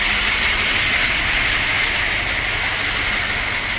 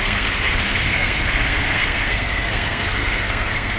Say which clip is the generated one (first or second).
second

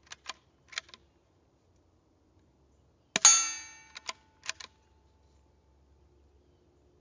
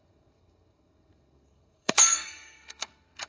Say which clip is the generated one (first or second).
second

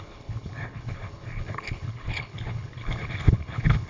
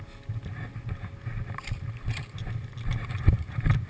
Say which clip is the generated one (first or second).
first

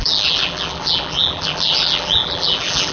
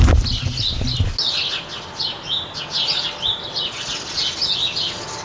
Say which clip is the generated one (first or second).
first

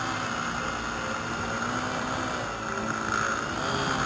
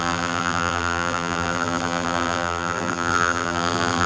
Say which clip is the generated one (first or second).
second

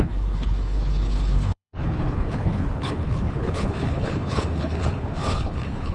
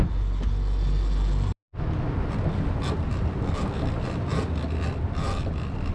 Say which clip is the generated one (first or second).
first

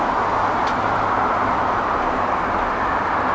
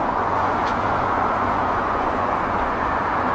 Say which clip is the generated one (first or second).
second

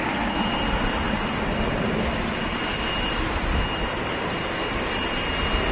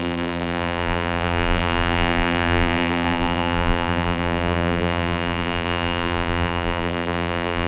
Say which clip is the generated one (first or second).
second